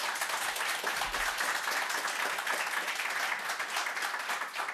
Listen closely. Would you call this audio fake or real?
real